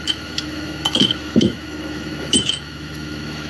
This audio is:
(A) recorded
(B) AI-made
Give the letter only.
B